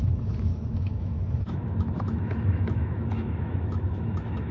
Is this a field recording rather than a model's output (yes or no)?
no